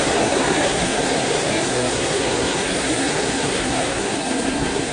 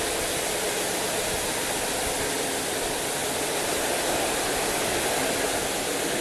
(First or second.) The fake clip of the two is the first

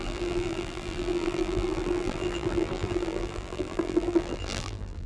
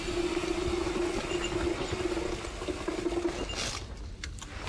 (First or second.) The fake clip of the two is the first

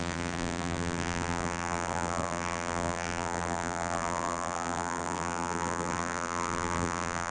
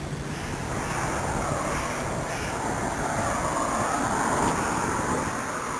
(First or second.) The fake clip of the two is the first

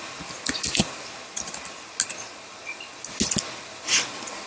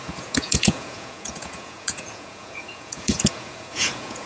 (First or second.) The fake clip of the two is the second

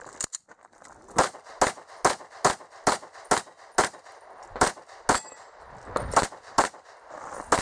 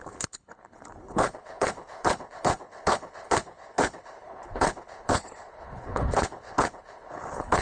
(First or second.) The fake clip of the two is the second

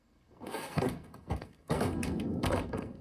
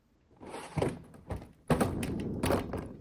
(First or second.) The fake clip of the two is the first